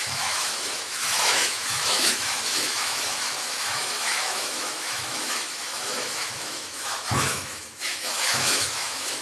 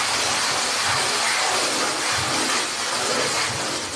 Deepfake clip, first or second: first